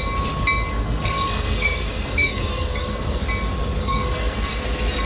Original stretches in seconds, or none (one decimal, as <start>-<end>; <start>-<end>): 0.0-0.7; 3.2-3.8; 4.6-5.1